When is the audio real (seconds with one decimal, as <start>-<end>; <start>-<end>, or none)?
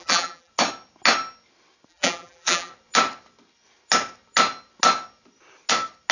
0.5-1.9; 2.7-6.1